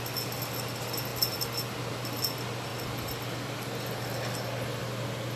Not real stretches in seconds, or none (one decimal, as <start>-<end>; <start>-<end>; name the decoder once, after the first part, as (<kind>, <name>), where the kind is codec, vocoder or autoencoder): none